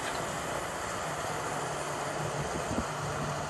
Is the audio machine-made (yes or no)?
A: no